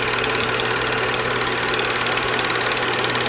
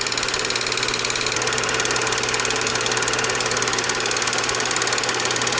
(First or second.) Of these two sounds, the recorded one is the first